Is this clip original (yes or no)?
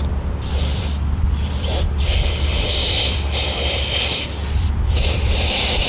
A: no